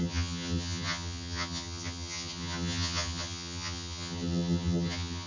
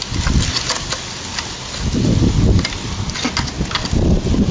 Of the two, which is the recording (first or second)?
second